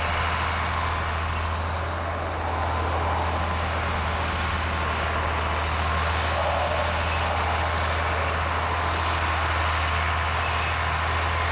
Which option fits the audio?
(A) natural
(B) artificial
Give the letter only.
A